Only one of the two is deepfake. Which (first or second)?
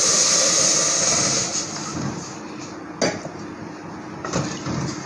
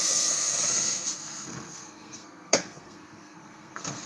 second